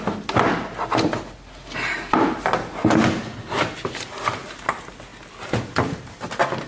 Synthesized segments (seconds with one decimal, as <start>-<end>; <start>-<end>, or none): none